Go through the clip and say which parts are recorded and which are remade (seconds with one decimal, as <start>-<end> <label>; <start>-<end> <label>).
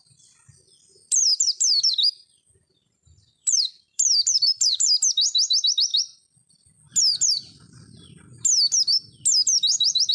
0.0-1.3 recorded; 1.3-5.1 remade; 5.1-5.9 recorded; 5.9-6.5 remade; 6.5-10.1 recorded